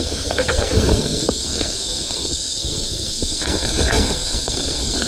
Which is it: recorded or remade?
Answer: remade